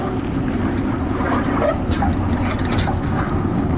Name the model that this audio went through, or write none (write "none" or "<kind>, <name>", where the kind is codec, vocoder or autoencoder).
none